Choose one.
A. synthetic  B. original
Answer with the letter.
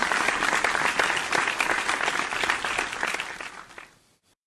B